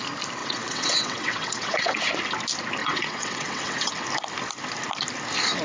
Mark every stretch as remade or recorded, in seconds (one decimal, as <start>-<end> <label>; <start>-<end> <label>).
0.0-0.4 recorded; 0.4-2.0 remade; 2.0-2.8 recorded; 2.8-3.9 remade; 3.9-5.6 recorded